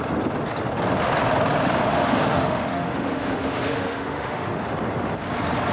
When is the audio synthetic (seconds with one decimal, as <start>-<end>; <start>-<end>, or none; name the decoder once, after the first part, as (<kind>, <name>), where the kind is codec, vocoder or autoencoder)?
1.8-4.6 (autoencoder, DAC-VAE)